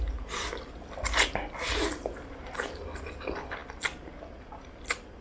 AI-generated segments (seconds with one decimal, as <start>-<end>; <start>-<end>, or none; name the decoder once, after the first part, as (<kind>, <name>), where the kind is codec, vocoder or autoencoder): none